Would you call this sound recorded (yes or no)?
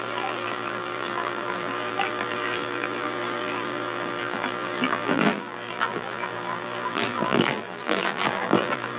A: no